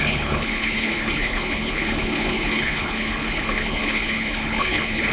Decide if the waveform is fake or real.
fake